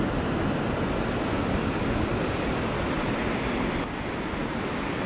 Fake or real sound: real